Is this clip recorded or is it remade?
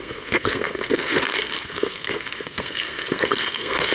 remade